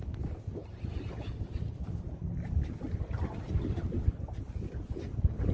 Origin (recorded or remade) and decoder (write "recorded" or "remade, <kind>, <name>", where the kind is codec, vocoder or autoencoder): recorded